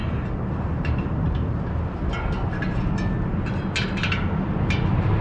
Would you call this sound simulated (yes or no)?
no